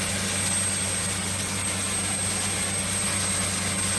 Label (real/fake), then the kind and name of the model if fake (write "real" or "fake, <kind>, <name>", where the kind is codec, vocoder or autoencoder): real